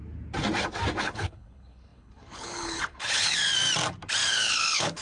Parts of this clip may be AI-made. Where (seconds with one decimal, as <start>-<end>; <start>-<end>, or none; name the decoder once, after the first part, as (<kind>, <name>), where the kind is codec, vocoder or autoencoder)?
1.0-3.5 (codec, HILCodec); 4.3-5.0